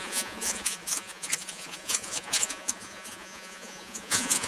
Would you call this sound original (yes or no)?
no